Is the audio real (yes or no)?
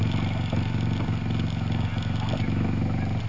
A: yes